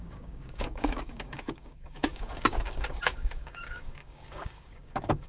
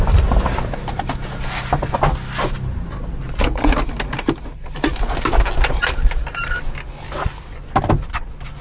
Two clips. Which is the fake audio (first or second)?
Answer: first